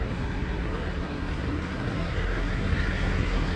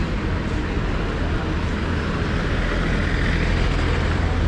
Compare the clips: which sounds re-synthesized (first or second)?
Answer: first